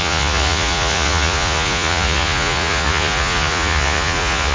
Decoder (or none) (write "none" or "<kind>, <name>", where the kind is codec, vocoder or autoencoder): vocoder, Vocos